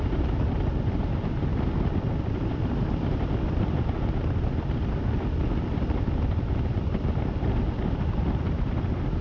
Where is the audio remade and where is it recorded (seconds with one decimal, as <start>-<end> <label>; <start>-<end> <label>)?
0.0-9.2 recorded